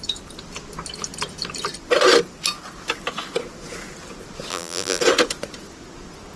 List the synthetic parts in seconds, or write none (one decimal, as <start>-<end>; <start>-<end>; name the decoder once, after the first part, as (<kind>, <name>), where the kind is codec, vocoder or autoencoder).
4.5-5.0 (vocoder, BigVGAN v2)